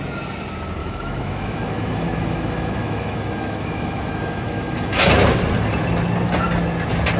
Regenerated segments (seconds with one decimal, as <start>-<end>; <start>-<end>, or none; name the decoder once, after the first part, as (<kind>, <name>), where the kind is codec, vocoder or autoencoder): 0.8-5.1 (autoencoder, DAC-VAE)

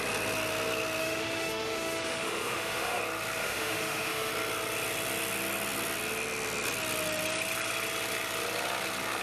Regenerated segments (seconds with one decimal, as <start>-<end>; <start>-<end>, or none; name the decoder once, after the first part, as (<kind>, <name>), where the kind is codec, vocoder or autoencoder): 1.0-3.0 (autoencoder, DAC-VAE); 3.4-4.3

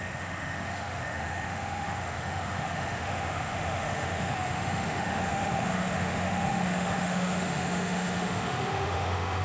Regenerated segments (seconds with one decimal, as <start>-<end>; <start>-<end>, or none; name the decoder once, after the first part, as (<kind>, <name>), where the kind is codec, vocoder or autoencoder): 0.0-9.4 (autoencoder, DAC-VAE)

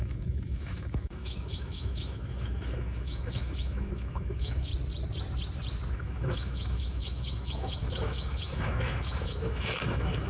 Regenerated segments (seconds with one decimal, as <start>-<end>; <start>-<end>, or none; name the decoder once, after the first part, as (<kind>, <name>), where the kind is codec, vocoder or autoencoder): 0.0-4.7 (autoencoder, DAC-VAE); 5.9-10.3